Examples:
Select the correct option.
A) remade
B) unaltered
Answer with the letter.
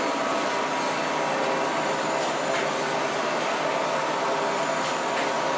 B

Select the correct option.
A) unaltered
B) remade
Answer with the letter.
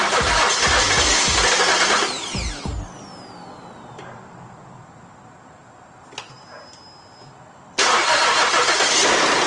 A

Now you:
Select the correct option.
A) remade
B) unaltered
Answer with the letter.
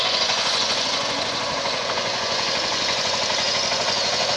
A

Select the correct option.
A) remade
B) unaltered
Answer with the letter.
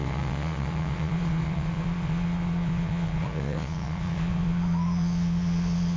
A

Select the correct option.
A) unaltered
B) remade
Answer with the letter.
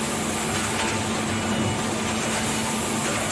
A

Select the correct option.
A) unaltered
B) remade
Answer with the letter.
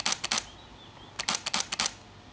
A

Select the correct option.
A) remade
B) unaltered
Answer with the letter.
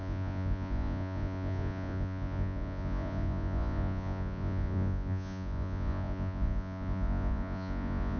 A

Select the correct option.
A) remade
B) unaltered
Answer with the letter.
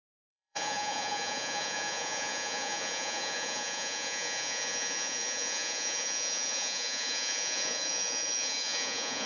A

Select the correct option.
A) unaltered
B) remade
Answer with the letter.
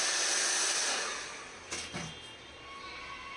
A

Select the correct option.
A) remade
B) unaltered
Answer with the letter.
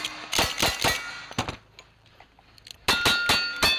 B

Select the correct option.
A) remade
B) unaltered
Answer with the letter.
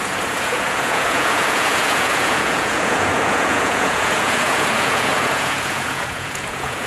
A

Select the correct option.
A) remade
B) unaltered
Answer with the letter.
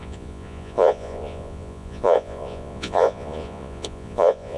A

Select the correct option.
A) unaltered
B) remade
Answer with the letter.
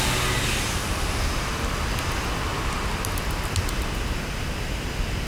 A